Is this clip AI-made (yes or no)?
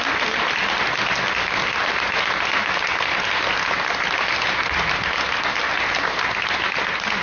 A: no